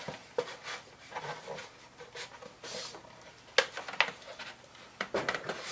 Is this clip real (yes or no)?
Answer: yes